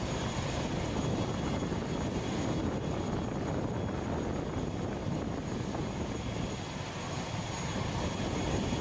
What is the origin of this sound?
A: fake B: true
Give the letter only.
B